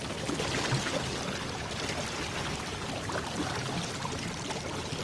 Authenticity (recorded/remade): recorded